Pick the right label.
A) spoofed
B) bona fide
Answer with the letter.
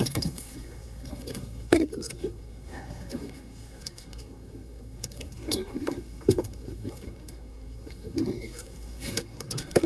A